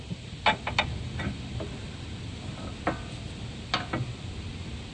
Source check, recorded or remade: recorded